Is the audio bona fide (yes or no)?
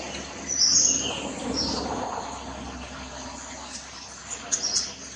yes